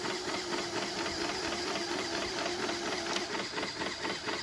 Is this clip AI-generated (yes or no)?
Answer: no